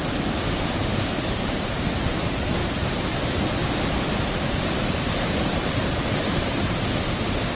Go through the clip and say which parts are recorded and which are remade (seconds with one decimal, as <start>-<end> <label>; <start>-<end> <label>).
0.0-3.6 remade; 3.6-4.3 recorded; 4.3-7.5 remade